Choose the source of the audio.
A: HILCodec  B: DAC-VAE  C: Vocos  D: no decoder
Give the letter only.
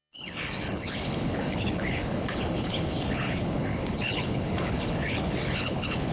A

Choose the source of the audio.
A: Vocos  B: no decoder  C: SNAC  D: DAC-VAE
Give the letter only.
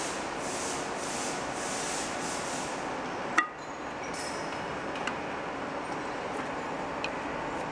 B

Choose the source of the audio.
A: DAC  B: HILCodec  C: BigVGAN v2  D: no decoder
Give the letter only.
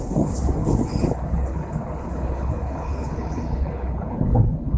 B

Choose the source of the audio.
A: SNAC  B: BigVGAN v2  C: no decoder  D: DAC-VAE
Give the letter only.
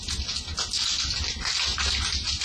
C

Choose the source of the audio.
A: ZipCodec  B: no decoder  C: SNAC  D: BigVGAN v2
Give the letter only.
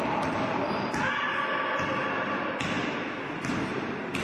B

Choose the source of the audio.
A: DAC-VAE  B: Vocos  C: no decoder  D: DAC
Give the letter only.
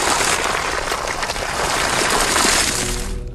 C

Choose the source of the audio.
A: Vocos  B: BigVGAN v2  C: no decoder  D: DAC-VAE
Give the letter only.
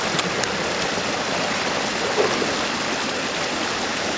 C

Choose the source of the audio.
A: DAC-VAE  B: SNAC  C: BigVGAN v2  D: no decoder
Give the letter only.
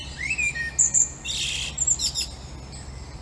D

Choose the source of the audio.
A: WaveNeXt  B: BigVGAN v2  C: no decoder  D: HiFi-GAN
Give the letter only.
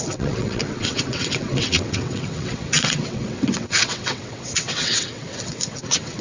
A